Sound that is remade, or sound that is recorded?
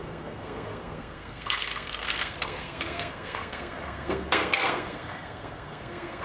remade